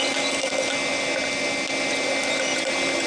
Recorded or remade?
recorded